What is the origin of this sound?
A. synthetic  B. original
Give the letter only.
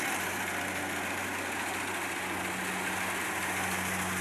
B